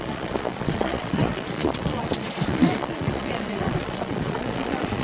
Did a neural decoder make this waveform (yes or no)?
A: yes